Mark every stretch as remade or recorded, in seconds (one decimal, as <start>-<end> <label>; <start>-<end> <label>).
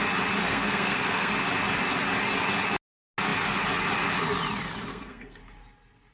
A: 0.0-0.4 recorded; 0.4-1.3 remade; 1.3-4.9 recorded; 4.9-5.4 remade; 5.4-6.1 recorded